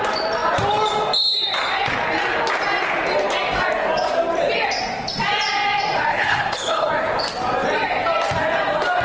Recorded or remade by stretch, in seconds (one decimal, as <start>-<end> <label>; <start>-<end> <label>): 0.0-6.1 recorded; 6.1-6.9 remade; 6.9-9.0 recorded